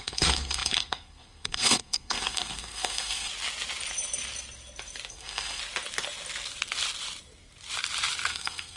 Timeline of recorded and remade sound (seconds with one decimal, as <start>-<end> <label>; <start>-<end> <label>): 0.0-3.3 remade; 3.3-5.1 recorded; 5.1-5.6 remade; 5.6-8.3 recorded; 8.3-8.8 remade